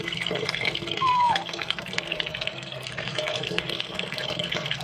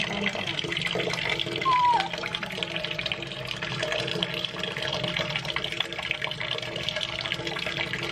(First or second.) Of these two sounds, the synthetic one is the first